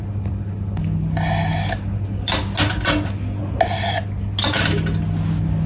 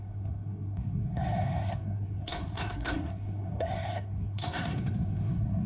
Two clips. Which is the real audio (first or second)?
first